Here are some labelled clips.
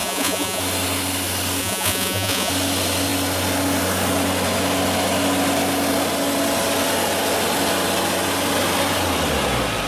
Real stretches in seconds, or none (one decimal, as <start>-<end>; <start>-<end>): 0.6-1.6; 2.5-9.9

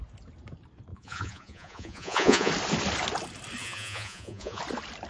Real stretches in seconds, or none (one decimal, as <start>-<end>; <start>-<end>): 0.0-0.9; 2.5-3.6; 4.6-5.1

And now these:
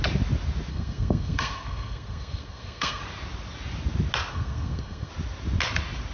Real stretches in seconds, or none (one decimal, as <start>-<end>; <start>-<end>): 0.0-0.7; 3.0-4.3; 5.1-6.1

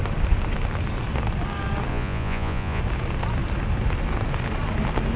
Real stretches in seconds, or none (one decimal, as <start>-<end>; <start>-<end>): 0.0-1.9; 2.8-5.2

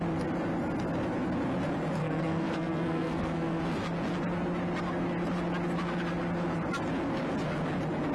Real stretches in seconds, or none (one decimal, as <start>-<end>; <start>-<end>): 0.0-2.0; 3.6-8.1

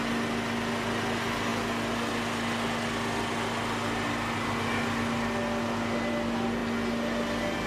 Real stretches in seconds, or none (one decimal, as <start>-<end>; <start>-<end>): 0.0-7.7

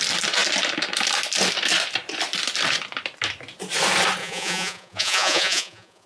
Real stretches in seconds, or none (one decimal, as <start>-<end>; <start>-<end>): 0.0-4.2

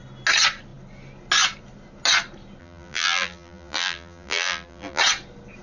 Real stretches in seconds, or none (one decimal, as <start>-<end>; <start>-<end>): 0.0-2.6; 5.0-5.6